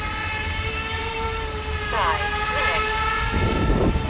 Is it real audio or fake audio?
fake